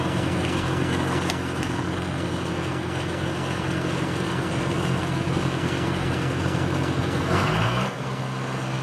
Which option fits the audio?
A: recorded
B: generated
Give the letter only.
B